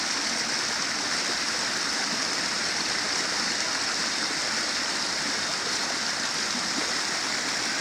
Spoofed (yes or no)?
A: no